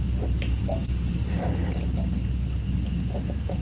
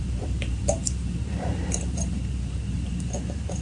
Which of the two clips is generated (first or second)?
second